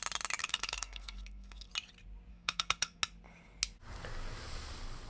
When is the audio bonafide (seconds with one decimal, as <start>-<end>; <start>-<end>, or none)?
0.0-0.4; 1.7-2.3; 3.0-5.1